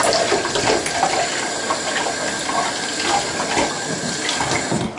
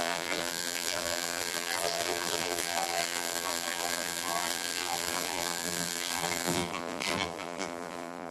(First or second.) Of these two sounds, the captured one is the first